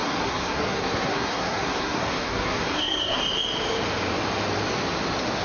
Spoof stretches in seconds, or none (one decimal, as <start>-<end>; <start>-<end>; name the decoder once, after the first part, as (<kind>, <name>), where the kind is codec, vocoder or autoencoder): 0.0-3.2 (codec, SNAC)